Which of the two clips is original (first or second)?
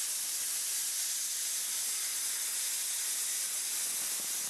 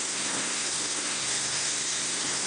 first